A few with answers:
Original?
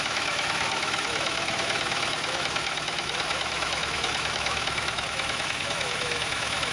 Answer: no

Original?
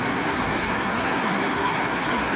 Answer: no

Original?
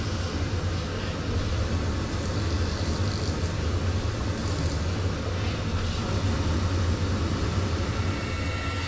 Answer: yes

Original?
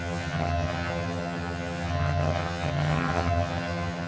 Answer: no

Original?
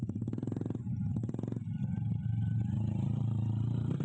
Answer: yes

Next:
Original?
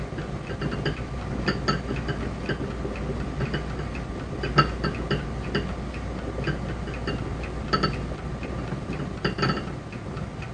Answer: yes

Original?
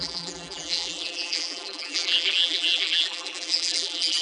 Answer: no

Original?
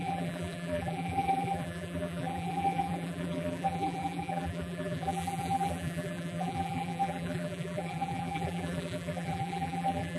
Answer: no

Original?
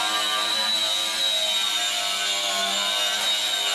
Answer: yes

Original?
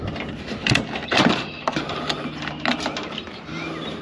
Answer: yes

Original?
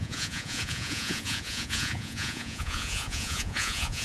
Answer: no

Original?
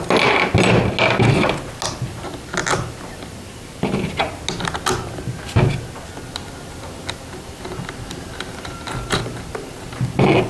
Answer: yes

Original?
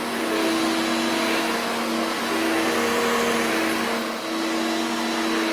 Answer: yes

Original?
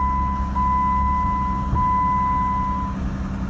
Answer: yes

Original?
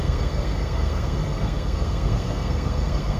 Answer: no